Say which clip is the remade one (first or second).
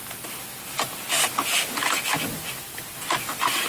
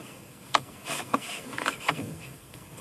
second